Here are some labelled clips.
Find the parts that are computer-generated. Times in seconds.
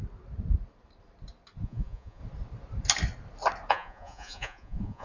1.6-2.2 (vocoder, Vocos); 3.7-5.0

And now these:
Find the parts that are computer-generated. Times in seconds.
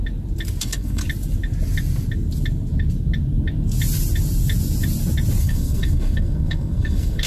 0.6-1.0 (codec, SNAC); 5.4-7.3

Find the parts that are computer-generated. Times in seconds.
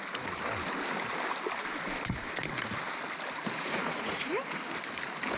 3.4-4.3 (vocoder, Vocos)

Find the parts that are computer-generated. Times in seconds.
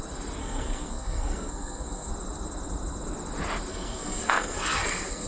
0.4-2.1 (codec, SNAC); 3.7-5.3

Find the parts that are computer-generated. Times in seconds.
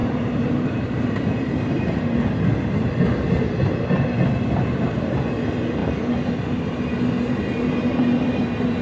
0.0-2.9 (vocoder, BigVGAN v2)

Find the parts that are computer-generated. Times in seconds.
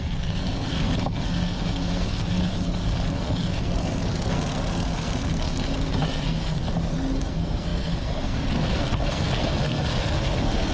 0.0-6.6 (codec, SNAC); 7.2-10.7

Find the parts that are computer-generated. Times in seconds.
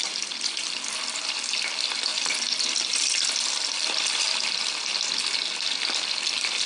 none